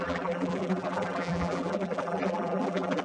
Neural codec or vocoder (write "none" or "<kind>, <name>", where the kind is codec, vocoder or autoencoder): vocoder, BigVGAN v2